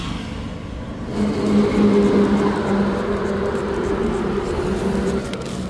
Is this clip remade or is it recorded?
recorded